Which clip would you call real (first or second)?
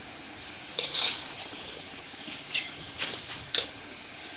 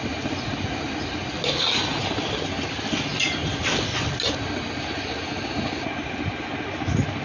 second